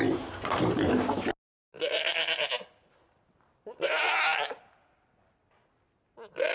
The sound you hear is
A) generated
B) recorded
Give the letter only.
B